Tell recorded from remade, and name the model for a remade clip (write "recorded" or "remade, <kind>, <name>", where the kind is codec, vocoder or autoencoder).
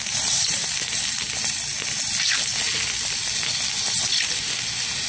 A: recorded